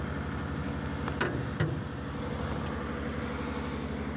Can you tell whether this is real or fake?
real